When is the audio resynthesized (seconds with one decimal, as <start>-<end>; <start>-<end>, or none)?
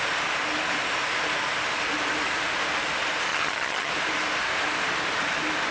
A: 3.3-3.9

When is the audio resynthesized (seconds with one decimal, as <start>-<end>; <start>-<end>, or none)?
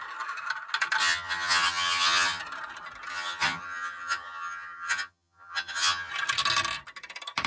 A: 1.0-2.4; 3.1-6.1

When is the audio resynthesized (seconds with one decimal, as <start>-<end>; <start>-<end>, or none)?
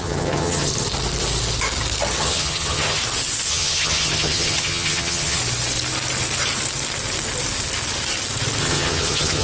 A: 0.0-0.7; 2.2-3.0; 3.5-5.4; 8.6-9.4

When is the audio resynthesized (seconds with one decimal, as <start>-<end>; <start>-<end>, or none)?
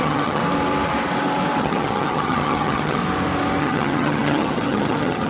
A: 0.0-0.4; 1.6-3.0; 3.6-5.3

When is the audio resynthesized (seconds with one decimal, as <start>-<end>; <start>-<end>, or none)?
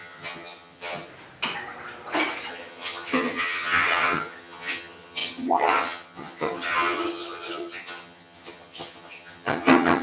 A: 0.0-1.1; 2.5-10.0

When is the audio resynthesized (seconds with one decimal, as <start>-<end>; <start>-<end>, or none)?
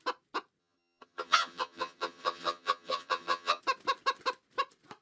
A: 0.6-3.6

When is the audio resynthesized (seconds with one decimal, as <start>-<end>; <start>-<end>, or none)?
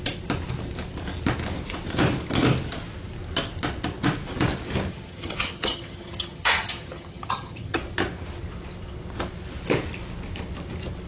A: 4.9-7.8